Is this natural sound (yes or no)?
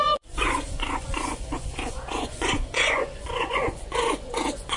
no